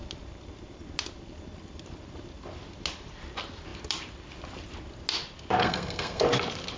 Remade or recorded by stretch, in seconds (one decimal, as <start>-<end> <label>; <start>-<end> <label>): 0.0-5.6 recorded; 5.6-6.2 remade; 6.2-6.8 recorded